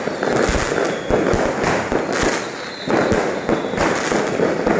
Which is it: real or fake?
real